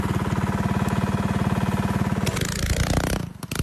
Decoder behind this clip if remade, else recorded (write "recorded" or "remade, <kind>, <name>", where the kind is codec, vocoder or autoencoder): recorded